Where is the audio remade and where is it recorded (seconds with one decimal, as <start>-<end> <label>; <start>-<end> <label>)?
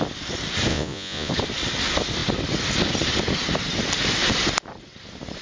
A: 0.0-0.7 recorded; 0.7-1.3 remade; 1.3-5.4 recorded